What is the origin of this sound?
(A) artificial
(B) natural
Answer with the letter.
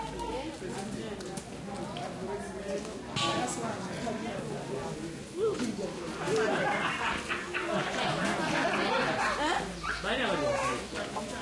B